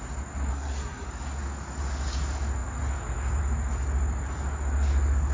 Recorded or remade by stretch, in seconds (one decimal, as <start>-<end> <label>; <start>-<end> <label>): 0.0-0.5 recorded; 0.5-1.1 remade; 1.1-5.3 recorded